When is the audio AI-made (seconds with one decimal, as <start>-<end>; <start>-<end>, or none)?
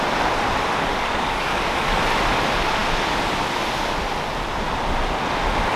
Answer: 0.9-1.9